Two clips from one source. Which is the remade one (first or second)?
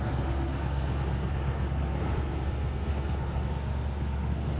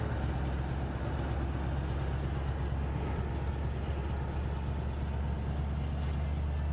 first